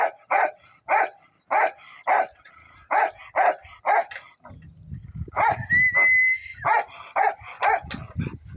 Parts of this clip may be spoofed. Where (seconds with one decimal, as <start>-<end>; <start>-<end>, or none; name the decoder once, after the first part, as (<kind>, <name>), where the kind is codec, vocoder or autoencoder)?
none